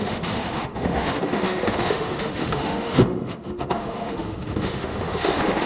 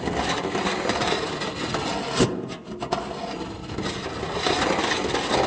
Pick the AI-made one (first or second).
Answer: first